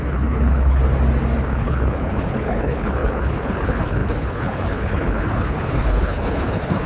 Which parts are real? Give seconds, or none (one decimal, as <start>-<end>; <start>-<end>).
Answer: 0.8-1.4